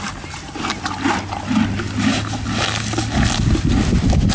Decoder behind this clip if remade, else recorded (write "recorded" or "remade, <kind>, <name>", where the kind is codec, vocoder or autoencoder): recorded